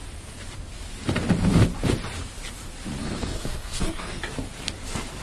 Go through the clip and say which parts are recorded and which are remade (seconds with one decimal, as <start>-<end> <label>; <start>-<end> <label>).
0.0-3.0 recorded; 3.0-4.2 remade; 4.2-5.2 recorded